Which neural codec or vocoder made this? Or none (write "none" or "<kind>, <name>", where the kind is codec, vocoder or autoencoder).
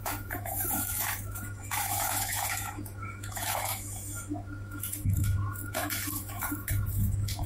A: autoencoder, DAC-VAE